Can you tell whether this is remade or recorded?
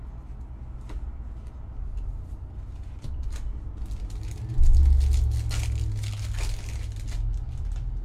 recorded